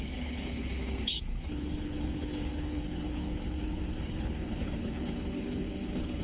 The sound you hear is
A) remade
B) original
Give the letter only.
A